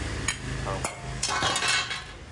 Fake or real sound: real